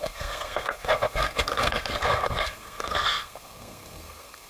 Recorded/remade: remade